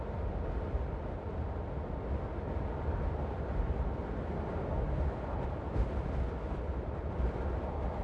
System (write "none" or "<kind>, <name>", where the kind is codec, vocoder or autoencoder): none